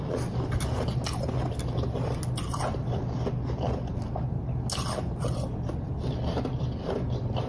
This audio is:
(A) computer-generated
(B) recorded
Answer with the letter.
B